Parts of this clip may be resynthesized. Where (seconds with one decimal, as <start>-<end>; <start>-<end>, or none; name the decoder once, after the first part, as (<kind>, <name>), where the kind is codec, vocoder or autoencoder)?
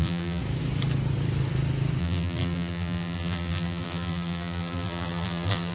0.0-0.4 (vocoder, BigVGAN v2); 2.0-5.7